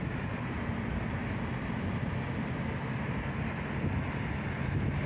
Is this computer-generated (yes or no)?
no